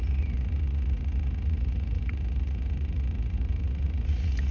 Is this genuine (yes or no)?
no